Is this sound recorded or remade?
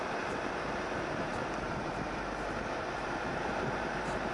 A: remade